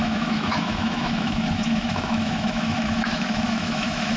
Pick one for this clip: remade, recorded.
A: remade